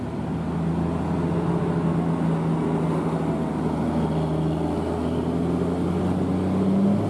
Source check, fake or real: real